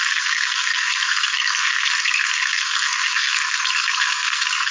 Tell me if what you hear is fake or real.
fake